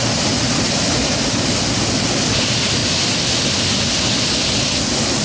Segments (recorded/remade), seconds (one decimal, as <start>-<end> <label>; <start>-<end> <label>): 0.0-5.2 recorded